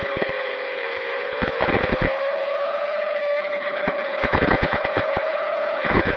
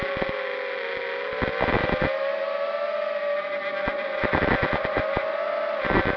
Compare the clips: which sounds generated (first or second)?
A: first